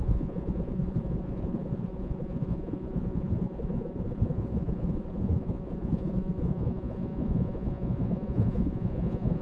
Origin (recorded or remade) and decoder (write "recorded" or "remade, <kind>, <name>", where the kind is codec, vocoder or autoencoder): remade, vocoder, Vocos